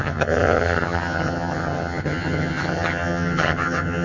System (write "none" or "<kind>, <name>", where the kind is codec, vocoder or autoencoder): vocoder, HiFi-GAN